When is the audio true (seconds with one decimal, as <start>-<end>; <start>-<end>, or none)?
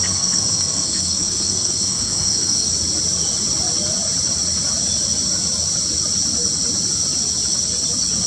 2.7-8.3